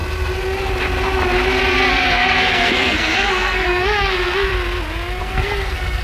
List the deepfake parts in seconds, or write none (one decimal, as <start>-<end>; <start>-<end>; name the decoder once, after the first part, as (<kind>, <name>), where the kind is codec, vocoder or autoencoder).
1.9-4.5 (codec, SNAC); 5.2-6.0